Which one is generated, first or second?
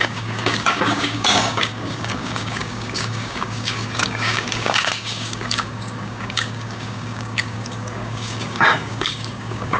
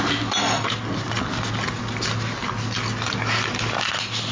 first